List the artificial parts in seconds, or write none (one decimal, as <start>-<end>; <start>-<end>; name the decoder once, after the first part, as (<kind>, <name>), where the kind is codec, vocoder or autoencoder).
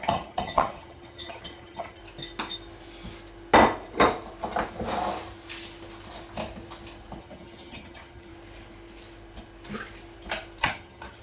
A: 0.0-2.0 (vocoder, HiFi-GAN); 7.2-8.3; 10.6-11.2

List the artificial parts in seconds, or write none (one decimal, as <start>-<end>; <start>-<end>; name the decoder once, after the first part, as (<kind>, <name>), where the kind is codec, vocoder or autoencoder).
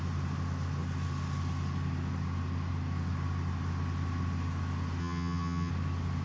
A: 5.0-5.7 (vocoder, HiFi-GAN)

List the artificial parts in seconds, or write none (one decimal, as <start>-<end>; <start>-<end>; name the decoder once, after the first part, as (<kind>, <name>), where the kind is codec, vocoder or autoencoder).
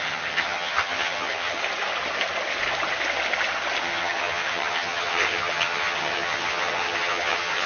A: 0.0-1.6 (vocoder, HiFi-GAN); 3.8-7.7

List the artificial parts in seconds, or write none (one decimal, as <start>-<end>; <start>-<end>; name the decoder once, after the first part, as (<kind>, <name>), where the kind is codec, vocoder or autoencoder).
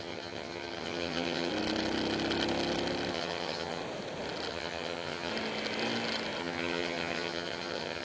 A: 0.0-1.5 (vocoder, HiFi-GAN); 3.1-3.8; 4.5-5.3; 6.4-8.0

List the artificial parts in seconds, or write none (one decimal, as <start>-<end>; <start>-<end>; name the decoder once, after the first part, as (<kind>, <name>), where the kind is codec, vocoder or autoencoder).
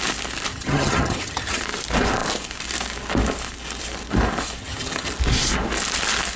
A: 0.5-1.6 (vocoder, HiFi-GAN); 4.6-5.1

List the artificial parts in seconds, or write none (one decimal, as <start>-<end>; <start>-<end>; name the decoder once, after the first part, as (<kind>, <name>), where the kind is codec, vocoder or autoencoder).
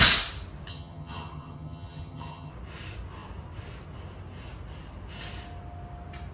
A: 0.7-2.5 (vocoder, HiFi-GAN)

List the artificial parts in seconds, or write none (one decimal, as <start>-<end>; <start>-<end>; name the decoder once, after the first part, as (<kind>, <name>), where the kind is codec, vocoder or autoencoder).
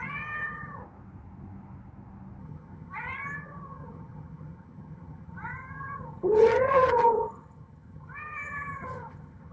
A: 0.0-0.8 (vocoder, HiFi-GAN); 2.4-9.5